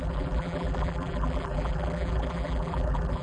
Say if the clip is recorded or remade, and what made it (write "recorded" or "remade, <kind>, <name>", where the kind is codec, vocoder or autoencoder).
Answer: remade, vocoder, BigVGAN v2